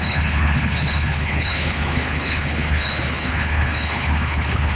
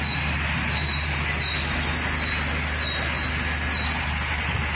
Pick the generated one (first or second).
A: first